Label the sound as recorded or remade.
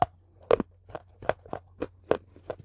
recorded